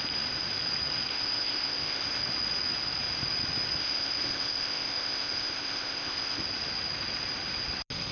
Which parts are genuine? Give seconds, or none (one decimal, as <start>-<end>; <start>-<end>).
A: 0.0-1.1; 2.2-3.8; 6.4-8.1

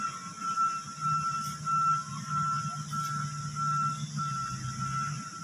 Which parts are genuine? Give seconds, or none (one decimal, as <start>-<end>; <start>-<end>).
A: 0.0-5.4

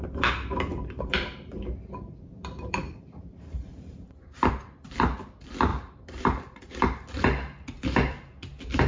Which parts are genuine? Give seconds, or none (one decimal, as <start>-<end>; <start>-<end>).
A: 0.0-0.7; 4.5-5.7; 6.6-8.9

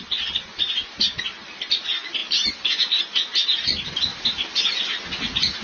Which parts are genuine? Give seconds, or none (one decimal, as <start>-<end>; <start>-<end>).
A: 0.0-2.2; 3.0-4.1; 4.8-5.6